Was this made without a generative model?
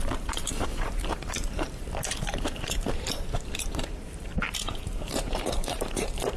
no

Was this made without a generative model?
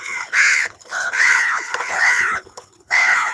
no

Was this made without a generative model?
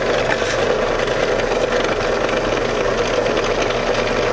yes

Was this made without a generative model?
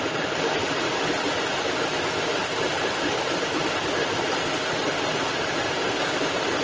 yes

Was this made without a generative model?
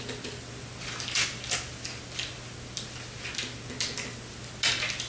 yes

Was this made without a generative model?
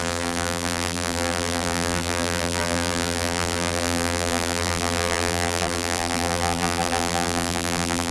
no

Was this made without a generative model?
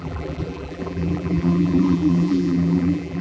no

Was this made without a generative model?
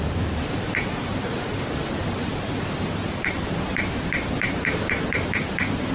no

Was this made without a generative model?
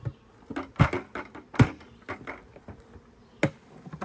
yes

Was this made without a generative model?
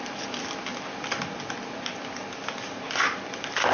yes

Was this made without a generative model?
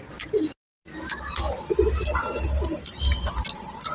yes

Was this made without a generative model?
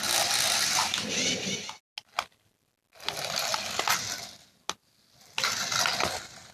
yes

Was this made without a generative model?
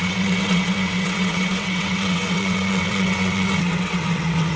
no